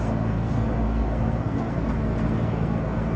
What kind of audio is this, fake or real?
fake